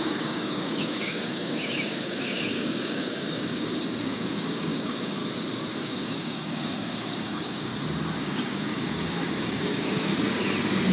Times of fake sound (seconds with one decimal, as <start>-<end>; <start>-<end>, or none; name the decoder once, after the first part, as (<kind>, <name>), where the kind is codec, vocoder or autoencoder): 0.0-5.2 (codec, DAC); 5.8-7.7; 8.2-10.1